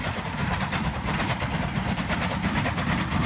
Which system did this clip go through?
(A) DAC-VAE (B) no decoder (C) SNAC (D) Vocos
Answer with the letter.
B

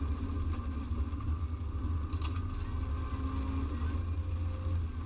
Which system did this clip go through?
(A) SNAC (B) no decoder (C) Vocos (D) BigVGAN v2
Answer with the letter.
B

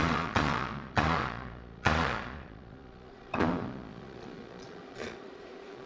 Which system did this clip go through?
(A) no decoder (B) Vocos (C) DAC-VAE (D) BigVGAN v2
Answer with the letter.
B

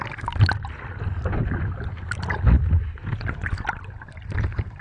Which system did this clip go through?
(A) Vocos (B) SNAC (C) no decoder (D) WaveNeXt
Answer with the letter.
C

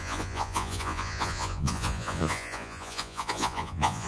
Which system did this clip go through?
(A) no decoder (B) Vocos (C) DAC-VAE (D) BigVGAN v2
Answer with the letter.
B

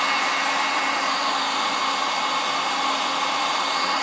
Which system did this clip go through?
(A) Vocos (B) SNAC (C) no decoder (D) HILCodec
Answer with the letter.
C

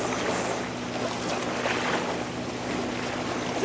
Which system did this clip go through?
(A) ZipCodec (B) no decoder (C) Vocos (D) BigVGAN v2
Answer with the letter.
B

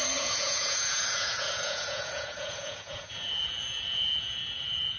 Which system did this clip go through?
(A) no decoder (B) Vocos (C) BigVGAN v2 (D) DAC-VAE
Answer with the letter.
B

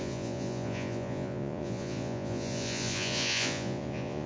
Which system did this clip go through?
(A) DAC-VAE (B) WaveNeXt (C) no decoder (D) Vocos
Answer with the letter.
D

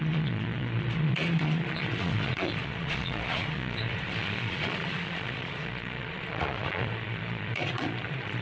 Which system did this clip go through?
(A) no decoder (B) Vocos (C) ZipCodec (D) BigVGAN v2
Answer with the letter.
B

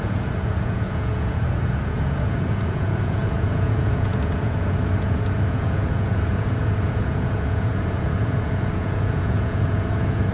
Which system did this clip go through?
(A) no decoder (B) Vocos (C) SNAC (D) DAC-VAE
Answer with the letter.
B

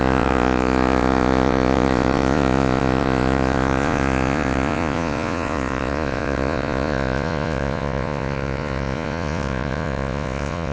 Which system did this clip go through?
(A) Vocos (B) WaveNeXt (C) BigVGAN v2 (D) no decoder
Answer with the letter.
A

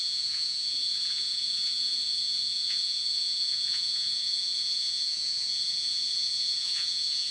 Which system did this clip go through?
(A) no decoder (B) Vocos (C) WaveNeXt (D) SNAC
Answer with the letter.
B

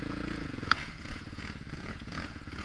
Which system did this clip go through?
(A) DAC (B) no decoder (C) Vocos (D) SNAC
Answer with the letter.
C